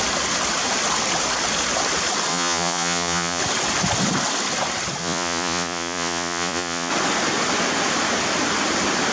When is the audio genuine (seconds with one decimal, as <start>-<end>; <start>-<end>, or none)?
0.0-2.3; 3.4-5.0; 6.9-9.1